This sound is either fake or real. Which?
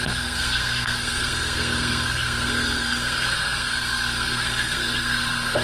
fake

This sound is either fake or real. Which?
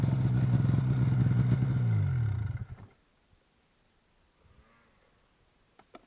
real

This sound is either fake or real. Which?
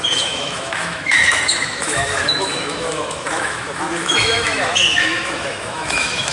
fake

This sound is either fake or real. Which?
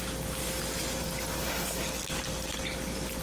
real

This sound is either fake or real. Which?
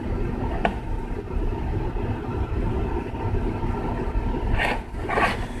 real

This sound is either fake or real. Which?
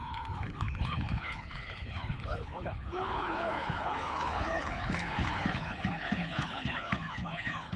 fake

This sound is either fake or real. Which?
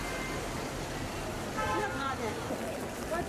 real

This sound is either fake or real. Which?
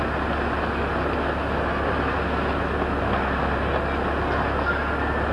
real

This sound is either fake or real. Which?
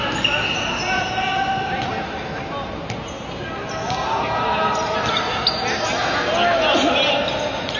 real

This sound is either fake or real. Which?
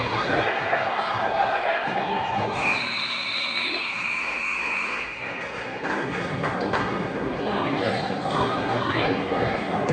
fake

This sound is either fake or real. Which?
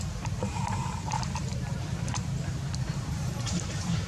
fake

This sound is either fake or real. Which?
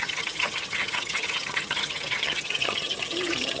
fake